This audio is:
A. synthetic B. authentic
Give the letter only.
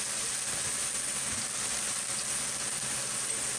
B